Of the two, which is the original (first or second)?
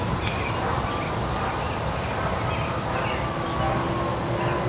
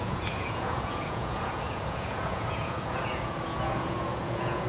first